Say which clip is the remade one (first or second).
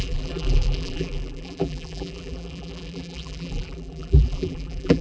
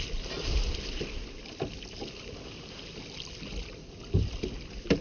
first